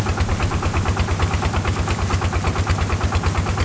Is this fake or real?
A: real